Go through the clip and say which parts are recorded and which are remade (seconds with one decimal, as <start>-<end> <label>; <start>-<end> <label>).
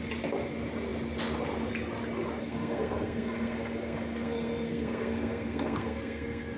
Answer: 0.0-2.4 recorded; 2.4-6.6 remade